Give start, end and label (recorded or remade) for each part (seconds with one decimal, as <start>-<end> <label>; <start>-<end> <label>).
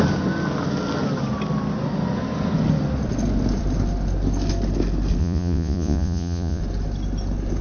0.0-5.2 recorded; 5.2-6.6 remade; 6.6-7.6 recorded